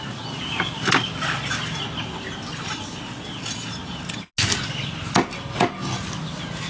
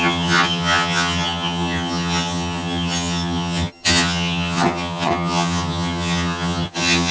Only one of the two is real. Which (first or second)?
first